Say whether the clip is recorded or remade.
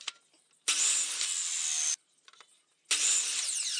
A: recorded